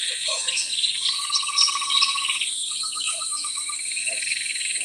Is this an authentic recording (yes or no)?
no